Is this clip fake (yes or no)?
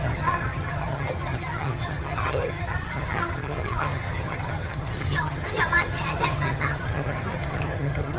yes